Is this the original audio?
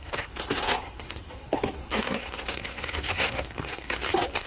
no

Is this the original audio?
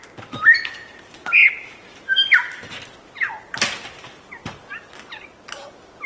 yes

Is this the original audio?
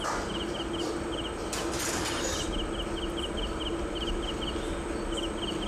yes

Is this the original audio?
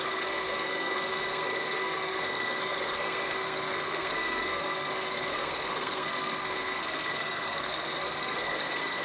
no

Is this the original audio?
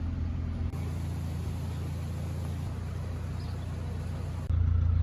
yes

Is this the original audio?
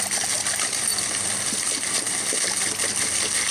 yes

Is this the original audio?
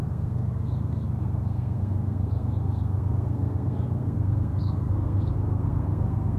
no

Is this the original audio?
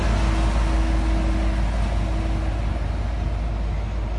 yes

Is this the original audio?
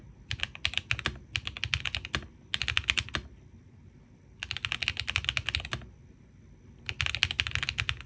yes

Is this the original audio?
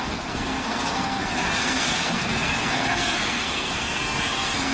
no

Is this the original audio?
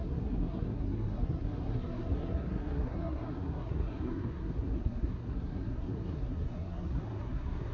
no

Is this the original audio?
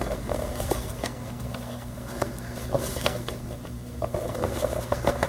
no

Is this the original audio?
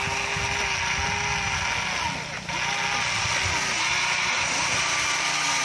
yes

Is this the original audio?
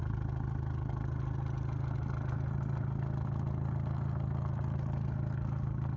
yes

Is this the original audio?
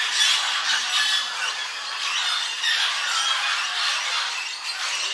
yes